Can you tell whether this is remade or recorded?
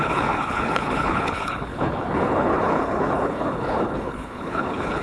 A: remade